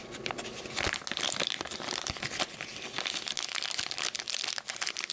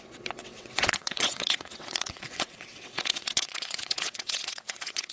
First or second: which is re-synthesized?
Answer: second